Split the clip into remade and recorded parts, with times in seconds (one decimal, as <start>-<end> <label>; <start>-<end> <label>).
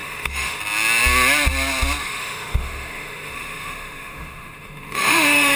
0.0-0.6 remade; 0.6-2.0 recorded; 2.0-5.6 remade